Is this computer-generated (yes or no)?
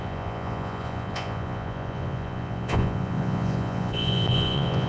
yes